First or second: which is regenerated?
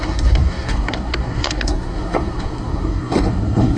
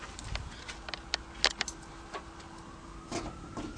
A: first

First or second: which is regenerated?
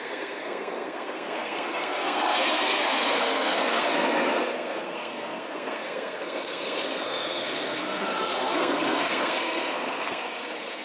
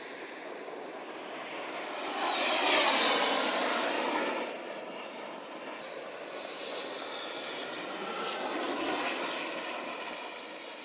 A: first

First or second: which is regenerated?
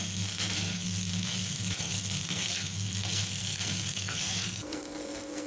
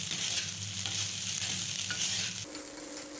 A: first